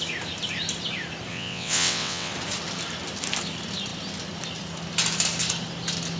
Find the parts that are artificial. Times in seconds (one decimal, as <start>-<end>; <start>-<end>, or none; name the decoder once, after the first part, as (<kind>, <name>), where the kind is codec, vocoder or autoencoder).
1.3-2.3 (vocoder, WaveNeXt)